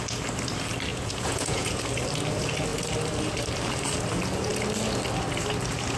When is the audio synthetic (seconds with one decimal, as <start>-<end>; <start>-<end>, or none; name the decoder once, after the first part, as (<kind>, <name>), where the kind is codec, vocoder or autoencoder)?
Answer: 0.9-1.8 (vocoder, Vocos)